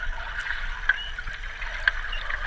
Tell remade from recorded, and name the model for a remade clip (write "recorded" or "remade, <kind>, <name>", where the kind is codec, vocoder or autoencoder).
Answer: recorded